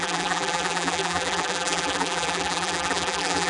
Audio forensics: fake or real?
fake